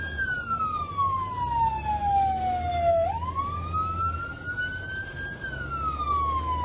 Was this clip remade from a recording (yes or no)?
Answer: no